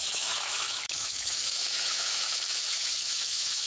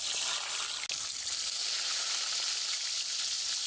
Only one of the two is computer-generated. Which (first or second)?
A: first